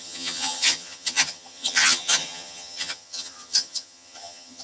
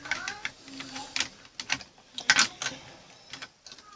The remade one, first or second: first